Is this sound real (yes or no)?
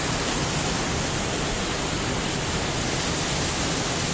yes